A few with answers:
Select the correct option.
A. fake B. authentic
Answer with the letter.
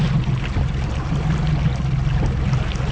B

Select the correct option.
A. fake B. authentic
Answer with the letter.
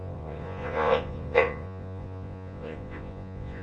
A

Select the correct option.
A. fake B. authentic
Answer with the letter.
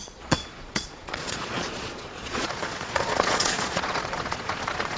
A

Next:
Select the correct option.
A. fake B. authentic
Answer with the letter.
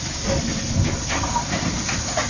B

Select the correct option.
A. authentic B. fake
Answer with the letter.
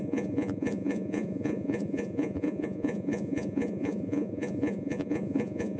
B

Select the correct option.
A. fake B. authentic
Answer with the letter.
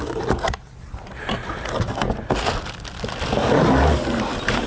B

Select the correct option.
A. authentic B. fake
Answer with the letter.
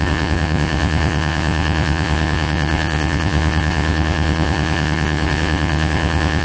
B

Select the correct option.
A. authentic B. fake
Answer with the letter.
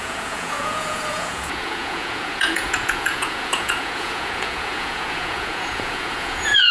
B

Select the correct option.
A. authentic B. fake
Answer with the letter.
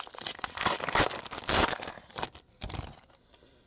A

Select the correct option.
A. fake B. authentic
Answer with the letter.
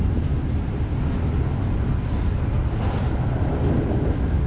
B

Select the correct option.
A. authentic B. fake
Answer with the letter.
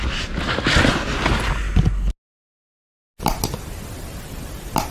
A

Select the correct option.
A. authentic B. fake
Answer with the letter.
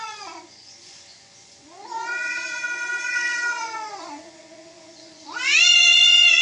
B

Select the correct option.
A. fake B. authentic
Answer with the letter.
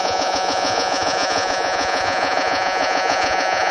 A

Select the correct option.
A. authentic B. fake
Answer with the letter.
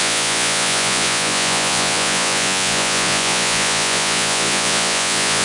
B